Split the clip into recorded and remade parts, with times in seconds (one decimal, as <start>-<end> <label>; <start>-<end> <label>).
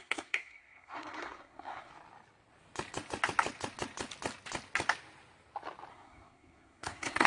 0.0-1.9 remade; 1.9-5.9 recorded; 5.9-7.3 remade